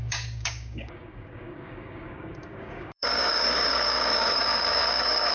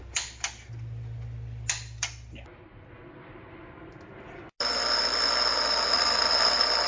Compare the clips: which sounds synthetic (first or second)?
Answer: first